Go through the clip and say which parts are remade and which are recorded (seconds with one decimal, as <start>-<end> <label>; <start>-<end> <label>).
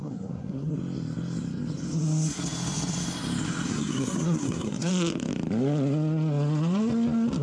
0.0-0.7 remade; 0.7-3.7 recorded; 3.7-4.9 remade; 4.9-7.4 recorded